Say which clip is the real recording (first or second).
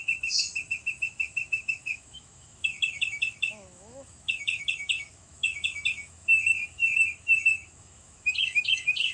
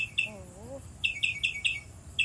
second